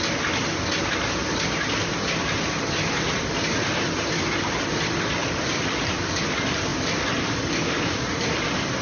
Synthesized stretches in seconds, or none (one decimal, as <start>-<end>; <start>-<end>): 5.2-6.1; 6.7-7.5